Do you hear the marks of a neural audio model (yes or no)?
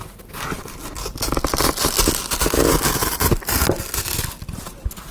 no